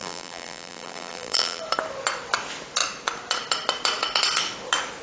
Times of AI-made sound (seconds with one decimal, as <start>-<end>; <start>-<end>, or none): 0.0-1.6